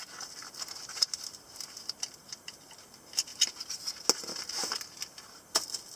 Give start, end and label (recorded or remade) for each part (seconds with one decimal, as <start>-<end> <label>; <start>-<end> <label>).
0.0-6.0 recorded